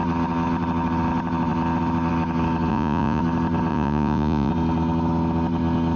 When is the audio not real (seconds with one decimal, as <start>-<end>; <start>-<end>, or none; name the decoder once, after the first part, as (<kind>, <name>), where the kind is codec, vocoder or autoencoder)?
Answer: 2.7-3.2 (vocoder, Vocos); 3.7-4.5